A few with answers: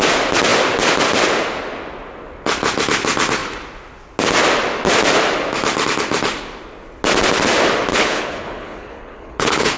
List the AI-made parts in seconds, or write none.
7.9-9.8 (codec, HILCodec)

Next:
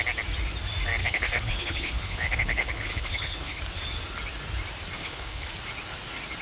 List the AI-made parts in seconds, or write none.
1.0-3.6 (codec, HILCodec); 5.0-5.5

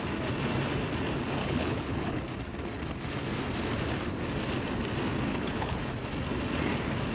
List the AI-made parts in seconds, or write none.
1.4-2.2 (codec, HILCodec); 5.3-5.9